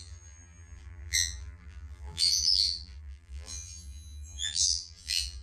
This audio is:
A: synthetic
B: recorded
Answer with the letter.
A